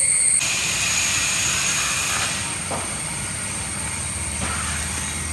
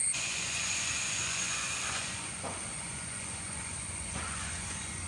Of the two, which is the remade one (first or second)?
second